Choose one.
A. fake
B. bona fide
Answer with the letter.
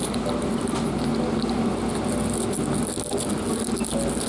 B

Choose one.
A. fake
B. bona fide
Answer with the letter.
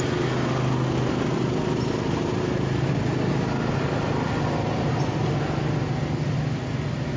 B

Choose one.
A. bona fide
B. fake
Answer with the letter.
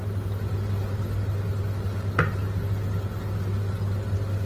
A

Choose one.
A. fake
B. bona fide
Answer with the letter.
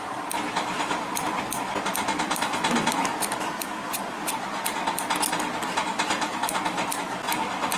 B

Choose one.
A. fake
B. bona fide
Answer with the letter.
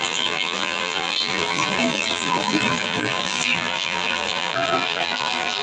A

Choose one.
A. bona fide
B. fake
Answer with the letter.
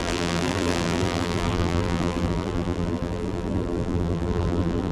B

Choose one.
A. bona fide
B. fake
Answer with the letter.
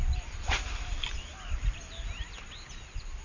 A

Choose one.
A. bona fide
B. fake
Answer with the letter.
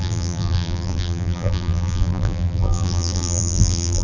B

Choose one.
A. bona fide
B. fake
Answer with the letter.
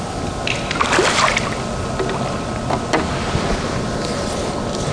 A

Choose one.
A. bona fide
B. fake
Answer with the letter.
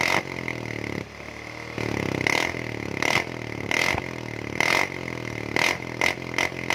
A